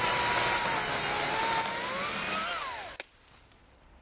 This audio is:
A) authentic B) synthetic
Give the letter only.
A